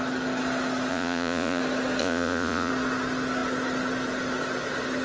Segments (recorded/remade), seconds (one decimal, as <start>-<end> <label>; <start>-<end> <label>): 0.0-0.9 recorded; 0.9-1.6 remade; 1.6-2.0 recorded; 2.0-2.7 remade; 2.7-5.0 recorded